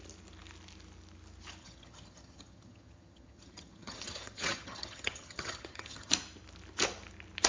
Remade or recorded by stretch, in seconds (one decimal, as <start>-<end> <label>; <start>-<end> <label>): 0.0-1.6 recorded; 1.6-6.1 remade; 6.1-7.5 recorded